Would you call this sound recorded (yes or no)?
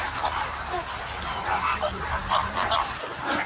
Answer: no